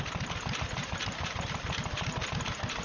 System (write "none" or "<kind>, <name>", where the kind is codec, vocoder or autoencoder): none